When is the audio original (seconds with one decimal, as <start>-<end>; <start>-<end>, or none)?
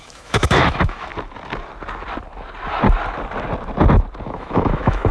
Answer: 1.1-4.2